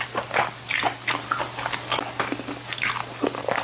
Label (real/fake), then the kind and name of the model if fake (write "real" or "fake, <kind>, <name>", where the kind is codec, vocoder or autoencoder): real